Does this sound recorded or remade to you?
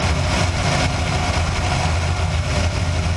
recorded